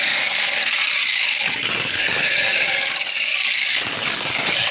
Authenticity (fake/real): fake